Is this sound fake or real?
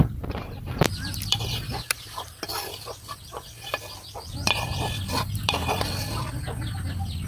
fake